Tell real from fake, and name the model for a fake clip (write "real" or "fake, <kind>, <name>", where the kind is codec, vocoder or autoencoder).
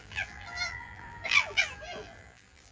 fake, vocoder, BigVGAN v2